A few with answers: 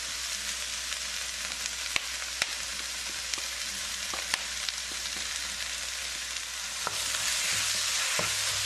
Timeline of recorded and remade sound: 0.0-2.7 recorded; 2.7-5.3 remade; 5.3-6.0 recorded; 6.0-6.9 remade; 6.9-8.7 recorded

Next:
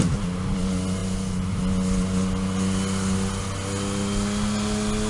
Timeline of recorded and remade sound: 0.0-5.1 recorded

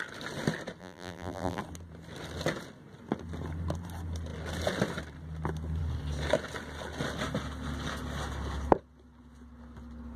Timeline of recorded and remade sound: 0.0-0.8 recorded; 0.8-1.6 remade; 1.6-10.2 recorded

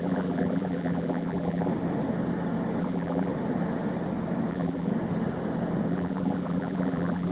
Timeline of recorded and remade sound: 0.0-1.7 remade; 1.7-2.8 recorded; 2.8-3.3 remade; 3.3-4.5 recorded; 4.5-4.9 remade; 4.9-5.9 recorded; 5.9-7.3 remade

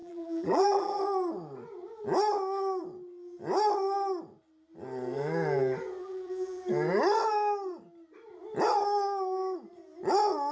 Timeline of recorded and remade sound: 0.0-1.0 remade; 1.0-6.0 recorded; 6.0-6.6 remade; 6.6-10.5 recorded